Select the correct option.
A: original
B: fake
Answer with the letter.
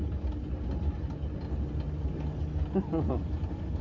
A